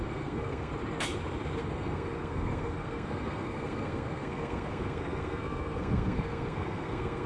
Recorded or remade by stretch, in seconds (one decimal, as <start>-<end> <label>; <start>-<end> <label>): 0.0-0.7 remade; 0.7-1.6 recorded; 1.6-7.3 remade